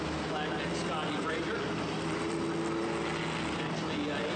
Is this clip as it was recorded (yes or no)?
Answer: yes